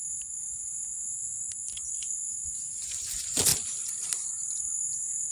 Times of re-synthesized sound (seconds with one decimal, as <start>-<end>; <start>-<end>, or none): 3.5-4.4